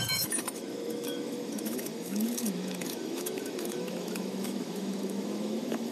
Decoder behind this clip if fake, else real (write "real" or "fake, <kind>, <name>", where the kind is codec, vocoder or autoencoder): fake, autoencoder, DAC-VAE